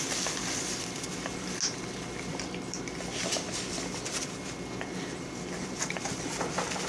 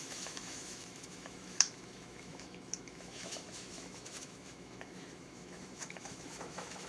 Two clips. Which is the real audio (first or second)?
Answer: first